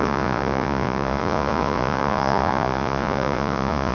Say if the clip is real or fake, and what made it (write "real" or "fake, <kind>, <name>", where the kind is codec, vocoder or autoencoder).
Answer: fake, vocoder, Vocos